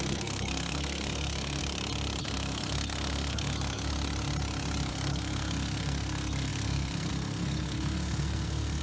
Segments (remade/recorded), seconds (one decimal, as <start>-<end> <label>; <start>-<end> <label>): 0.0-1.6 remade; 1.6-2.2 recorded; 2.2-3.9 remade; 3.9-4.9 recorded; 4.9-8.8 remade